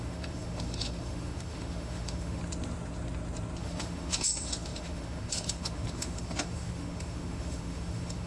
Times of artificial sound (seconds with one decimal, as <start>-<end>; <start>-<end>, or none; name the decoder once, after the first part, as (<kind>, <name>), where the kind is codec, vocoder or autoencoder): 0.0-2.4 (autoencoder, DAC-VAE); 3.6-8.3